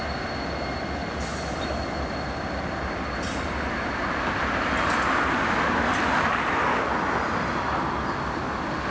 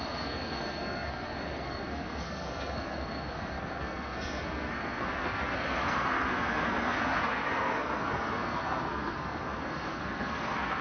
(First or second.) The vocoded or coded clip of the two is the second